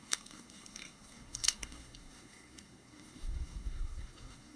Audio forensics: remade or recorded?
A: remade